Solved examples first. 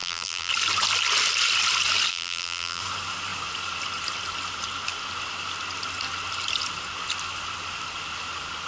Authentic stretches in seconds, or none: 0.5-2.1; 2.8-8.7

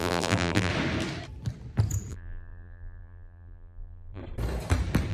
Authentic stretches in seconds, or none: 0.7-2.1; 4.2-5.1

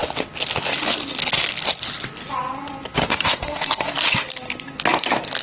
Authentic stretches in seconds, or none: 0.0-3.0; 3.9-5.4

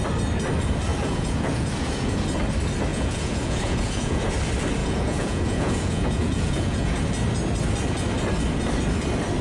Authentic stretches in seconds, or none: 0.0-0.9; 2.1-2.9; 4.3-4.8; 7.0-9.4